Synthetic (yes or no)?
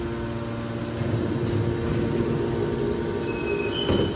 no